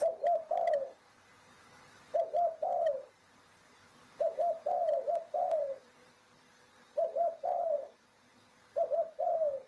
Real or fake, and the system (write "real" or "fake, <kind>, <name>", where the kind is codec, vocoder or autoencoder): fake, vocoder, BigVGAN v2